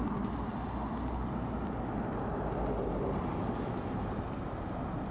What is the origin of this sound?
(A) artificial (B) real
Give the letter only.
B